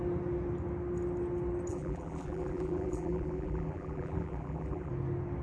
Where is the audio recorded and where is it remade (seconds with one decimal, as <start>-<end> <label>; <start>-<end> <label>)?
0.0-1.7 recorded; 1.7-4.9 remade; 4.9-5.4 recorded